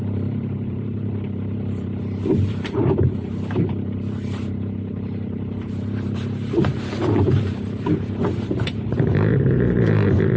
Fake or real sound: fake